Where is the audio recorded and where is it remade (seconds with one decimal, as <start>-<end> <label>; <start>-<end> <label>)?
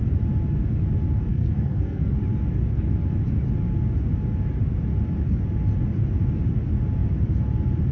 0.0-1.3 recorded; 1.3-2.1 remade; 2.1-7.9 recorded